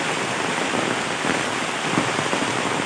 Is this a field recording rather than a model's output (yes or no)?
yes